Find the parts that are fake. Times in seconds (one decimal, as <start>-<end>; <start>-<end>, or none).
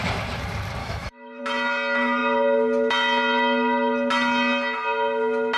0.8-1.4